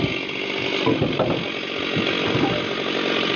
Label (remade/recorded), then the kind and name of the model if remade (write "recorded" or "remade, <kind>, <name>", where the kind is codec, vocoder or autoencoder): recorded